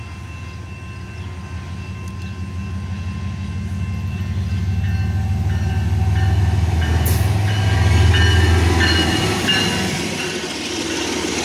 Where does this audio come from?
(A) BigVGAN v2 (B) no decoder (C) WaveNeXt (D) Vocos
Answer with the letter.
B